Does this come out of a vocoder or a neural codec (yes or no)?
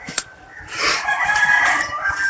yes